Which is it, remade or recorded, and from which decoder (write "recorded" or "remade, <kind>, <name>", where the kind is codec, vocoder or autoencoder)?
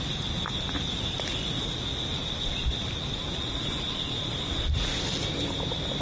recorded